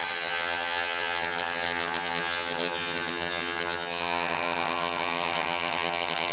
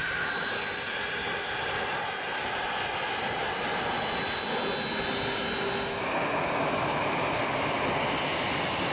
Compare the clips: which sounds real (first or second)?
second